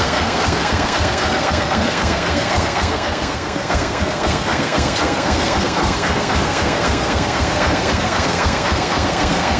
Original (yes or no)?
no